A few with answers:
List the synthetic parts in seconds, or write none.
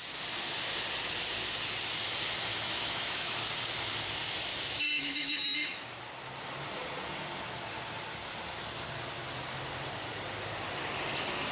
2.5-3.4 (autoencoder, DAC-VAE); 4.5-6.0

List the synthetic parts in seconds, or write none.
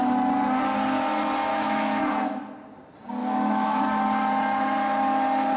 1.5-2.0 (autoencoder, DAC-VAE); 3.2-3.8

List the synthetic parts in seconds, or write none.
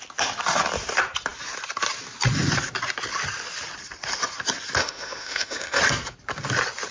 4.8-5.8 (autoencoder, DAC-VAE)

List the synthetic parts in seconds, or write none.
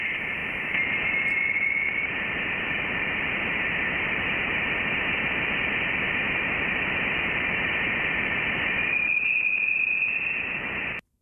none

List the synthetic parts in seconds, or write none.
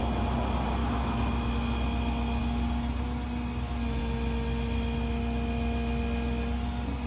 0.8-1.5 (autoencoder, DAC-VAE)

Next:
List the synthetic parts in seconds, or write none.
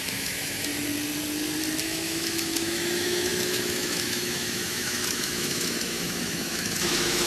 0.0-0.7 (autoencoder, DAC-VAE); 1.8-7.3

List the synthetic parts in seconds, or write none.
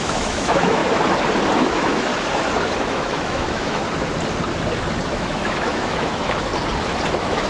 0.0-0.8 (autoencoder, DAC-VAE); 1.6-2.1; 2.9-3.8; 5.1-6.5; 7.1-7.5